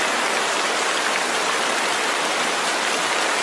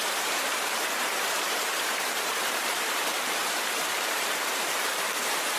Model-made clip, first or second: second